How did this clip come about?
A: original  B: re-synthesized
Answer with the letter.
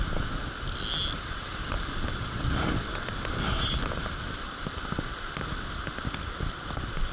A